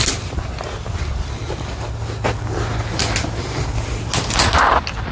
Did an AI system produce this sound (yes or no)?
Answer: no